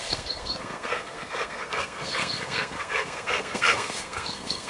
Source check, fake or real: fake